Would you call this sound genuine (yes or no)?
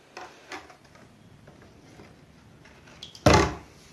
yes